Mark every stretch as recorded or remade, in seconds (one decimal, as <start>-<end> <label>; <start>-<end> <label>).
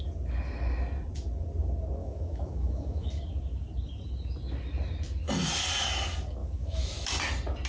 0.0-2.0 recorded; 2.0-3.1 remade; 3.1-6.4 recorded; 6.4-7.1 remade; 7.1-7.7 recorded